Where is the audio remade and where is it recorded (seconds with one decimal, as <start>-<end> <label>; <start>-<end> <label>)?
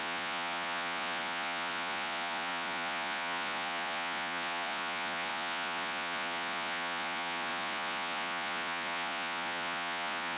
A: 0.0-10.4 remade